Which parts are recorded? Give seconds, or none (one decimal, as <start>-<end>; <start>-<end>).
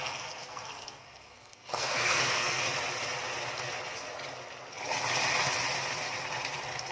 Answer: 2.6-6.9